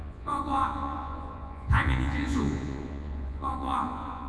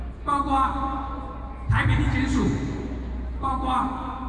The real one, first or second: second